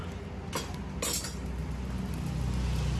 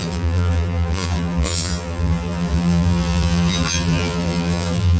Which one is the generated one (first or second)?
second